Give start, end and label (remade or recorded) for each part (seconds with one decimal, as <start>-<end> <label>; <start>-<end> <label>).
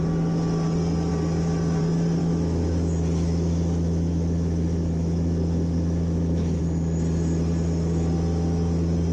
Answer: 0.0-2.2 recorded; 2.2-6.6 remade; 6.6-9.1 recorded